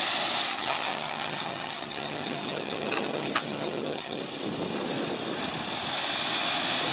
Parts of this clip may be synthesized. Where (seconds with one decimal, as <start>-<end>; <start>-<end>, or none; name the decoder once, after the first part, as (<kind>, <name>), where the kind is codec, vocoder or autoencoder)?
0.5-4.2 (vocoder, HiFi-GAN)